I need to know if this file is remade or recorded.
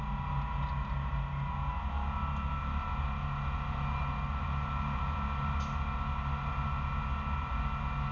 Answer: recorded